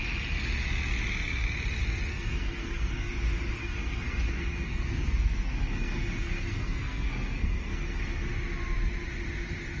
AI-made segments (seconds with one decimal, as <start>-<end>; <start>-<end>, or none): 2.1-3.1; 3.6-8.3